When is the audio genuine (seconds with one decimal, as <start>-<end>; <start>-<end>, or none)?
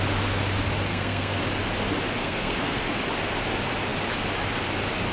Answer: 0.0-0.9; 1.4-2.2; 2.8-5.1